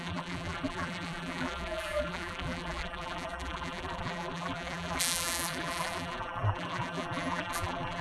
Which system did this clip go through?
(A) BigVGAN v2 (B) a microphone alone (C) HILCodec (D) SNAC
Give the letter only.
A